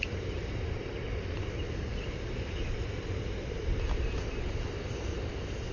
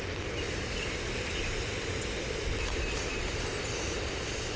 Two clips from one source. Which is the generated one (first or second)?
first